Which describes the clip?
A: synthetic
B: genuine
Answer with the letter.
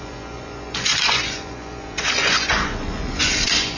A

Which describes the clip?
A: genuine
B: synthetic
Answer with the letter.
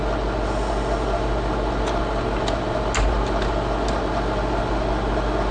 A